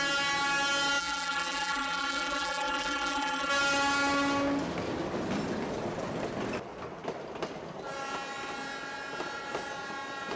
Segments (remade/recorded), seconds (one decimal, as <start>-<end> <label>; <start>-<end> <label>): 0.0-1.0 recorded; 1.0-3.5 remade; 3.5-10.4 recorded